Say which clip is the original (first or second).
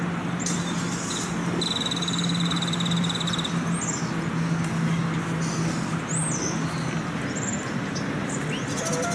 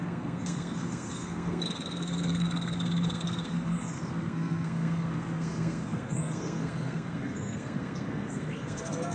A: first